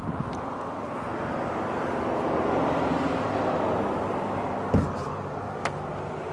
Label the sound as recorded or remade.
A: recorded